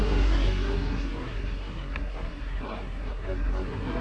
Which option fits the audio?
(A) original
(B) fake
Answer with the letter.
B